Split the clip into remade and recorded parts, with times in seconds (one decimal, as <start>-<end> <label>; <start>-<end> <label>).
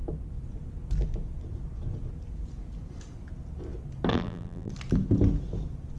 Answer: 0.0-4.1 recorded; 4.1-4.7 remade; 4.7-6.0 recorded